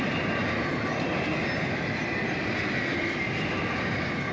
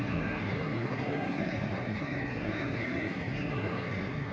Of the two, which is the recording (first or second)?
first